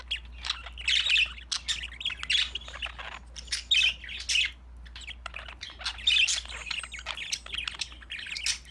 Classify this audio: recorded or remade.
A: recorded